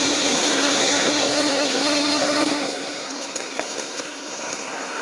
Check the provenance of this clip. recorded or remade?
remade